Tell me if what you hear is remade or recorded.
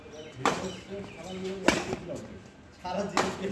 recorded